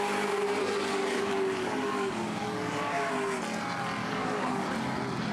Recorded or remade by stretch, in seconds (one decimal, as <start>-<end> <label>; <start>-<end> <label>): 0.0-0.9 recorded; 0.9-3.1 remade; 3.1-4.0 recorded; 4.0-4.7 remade; 4.7-5.3 recorded